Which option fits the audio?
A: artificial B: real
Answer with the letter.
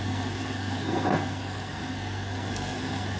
A